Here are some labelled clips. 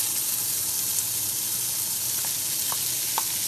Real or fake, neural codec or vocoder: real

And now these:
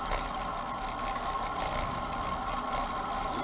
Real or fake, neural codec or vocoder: real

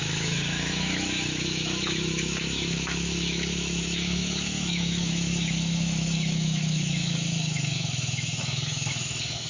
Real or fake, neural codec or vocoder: fake, autoencoder, DAC-VAE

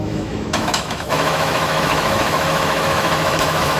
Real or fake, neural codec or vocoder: fake, autoencoder, DAC-VAE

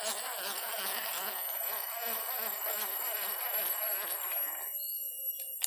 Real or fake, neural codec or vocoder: real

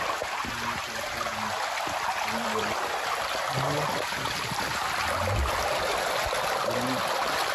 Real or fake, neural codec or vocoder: real